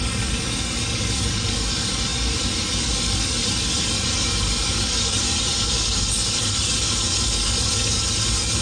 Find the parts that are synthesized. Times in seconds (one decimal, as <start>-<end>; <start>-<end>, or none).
0.0-8.6